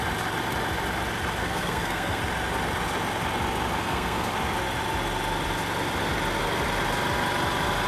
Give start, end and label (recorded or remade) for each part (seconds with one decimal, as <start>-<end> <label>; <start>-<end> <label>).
0.0-1.4 recorded; 1.4-2.2 remade; 2.2-3.8 recorded; 3.8-4.3 remade; 4.3-7.9 recorded